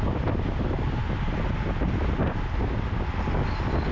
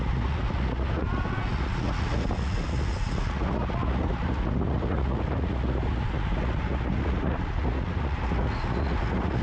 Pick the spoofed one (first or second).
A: second